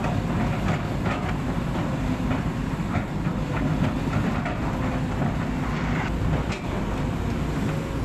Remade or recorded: recorded